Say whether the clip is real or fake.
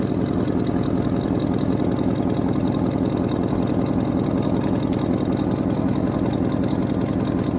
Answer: real